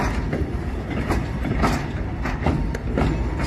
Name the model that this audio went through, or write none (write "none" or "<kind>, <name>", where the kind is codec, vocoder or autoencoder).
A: none